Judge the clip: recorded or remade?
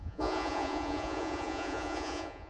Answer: remade